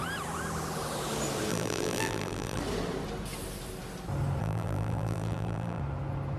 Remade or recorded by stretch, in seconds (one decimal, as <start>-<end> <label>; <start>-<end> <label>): 0.0-1.5 recorded; 1.5-2.6 remade; 2.6-4.4 recorded; 4.4-5.8 remade; 5.8-6.4 recorded